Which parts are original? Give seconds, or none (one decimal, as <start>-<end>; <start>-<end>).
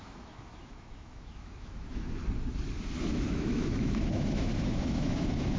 2.2-3.0